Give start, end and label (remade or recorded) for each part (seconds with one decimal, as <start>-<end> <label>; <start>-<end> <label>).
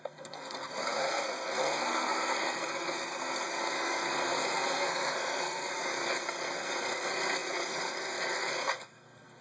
0.0-9.4 remade